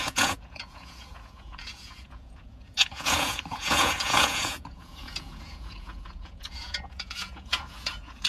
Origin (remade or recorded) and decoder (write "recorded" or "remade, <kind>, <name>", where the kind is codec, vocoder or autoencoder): remade, vocoder, Vocos